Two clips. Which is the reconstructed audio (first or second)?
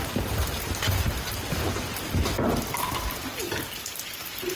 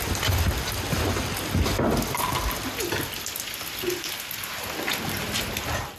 first